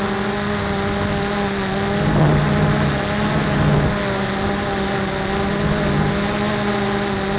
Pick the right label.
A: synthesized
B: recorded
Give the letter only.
B